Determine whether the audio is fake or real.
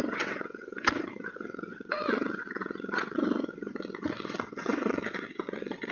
fake